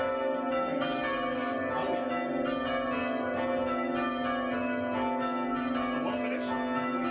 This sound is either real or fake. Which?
real